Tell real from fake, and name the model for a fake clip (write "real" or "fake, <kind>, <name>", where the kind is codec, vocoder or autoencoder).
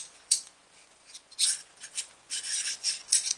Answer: fake, vocoder, Vocos